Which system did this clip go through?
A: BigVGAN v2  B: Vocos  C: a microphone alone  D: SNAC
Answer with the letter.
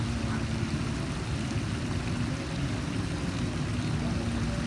C